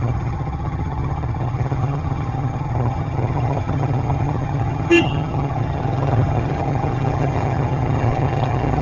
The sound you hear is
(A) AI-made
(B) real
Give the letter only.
A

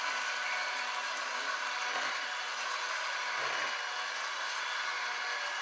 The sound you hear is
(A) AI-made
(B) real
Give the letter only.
B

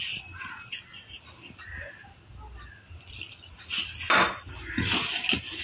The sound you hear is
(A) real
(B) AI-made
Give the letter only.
A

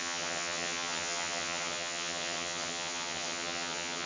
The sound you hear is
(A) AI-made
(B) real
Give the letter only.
A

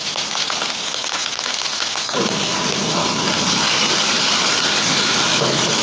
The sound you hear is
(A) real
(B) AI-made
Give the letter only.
A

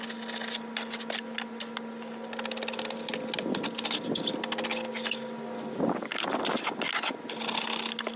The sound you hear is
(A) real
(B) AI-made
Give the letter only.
A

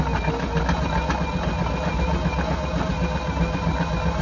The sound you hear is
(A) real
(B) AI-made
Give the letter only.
A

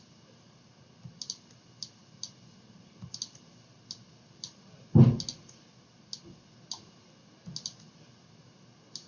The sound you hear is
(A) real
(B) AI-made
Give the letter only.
A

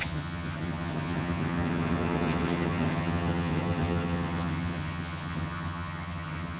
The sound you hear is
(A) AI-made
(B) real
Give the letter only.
A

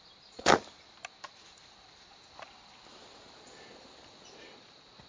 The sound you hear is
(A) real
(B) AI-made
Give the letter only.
A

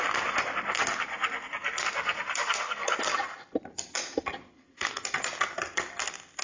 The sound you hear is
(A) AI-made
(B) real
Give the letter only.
B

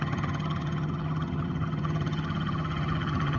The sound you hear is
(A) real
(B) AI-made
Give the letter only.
B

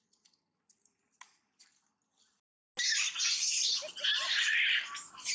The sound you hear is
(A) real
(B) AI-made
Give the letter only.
A